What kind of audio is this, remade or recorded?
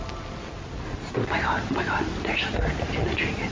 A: recorded